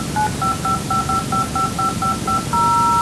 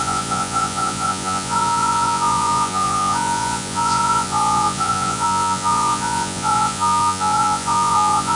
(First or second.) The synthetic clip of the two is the second